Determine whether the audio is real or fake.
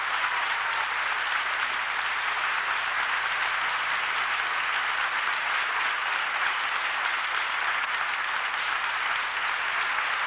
real